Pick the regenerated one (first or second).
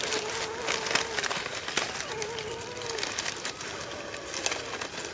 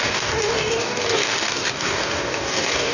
second